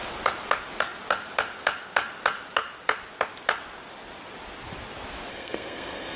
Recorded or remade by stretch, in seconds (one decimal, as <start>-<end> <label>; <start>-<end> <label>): 0.0-5.3 recorded; 5.3-6.2 remade